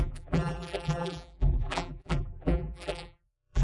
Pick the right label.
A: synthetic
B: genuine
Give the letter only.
A